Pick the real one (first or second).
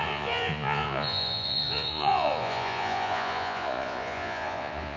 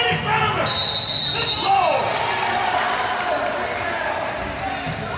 second